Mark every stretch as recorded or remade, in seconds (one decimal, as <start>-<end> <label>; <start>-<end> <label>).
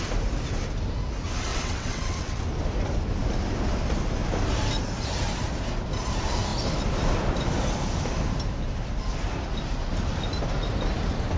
0.0-1.5 recorded; 1.5-2.4 remade; 2.4-11.4 recorded